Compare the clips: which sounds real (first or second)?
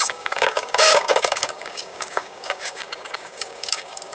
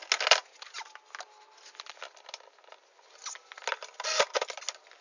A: second